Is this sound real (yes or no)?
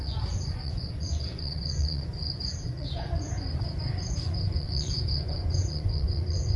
no